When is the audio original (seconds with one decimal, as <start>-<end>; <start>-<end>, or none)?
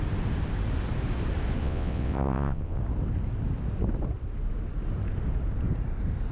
0.0-1.6; 2.8-6.3